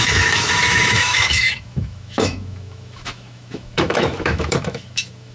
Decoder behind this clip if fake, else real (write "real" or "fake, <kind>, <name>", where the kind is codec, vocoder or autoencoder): fake, autoencoder, DAC-VAE